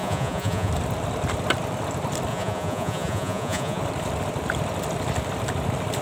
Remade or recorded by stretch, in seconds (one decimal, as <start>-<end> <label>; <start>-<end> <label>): 0.0-0.7 remade; 0.7-2.3 recorded; 2.3-3.8 remade; 3.8-6.0 recorded